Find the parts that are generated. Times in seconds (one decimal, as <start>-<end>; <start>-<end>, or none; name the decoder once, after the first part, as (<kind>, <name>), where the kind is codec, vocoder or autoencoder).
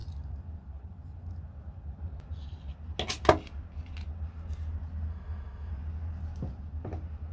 5.1-5.7 (autoencoder, DAC-VAE)